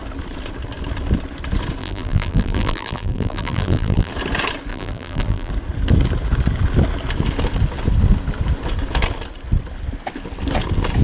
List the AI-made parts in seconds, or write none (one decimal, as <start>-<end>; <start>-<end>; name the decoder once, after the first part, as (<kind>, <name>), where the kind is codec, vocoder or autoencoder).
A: 1.8-4.1 (vocoder, BigVGAN v2); 4.7-5.5